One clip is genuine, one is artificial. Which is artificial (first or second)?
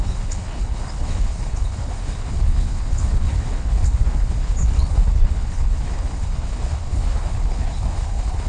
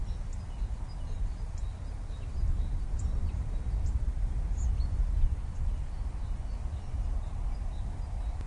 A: first